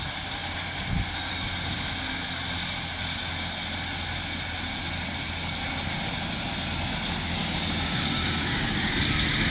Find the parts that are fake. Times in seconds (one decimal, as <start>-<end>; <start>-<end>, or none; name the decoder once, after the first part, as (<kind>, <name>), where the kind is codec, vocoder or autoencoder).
7.4-9.0 (codec, DAC)